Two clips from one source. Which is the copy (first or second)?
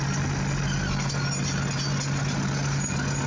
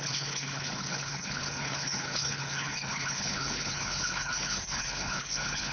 second